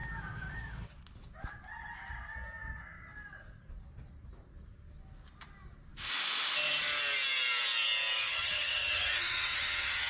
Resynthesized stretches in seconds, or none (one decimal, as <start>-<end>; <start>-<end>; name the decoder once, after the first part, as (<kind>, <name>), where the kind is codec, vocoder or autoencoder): 8.3-10.1 (vocoder, HiFi-GAN)